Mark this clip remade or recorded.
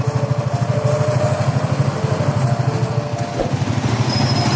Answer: recorded